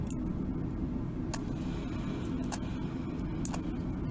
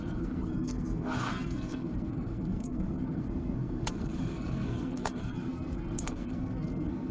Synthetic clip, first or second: second